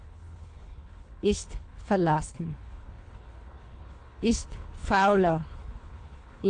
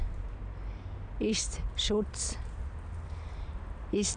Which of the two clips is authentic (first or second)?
second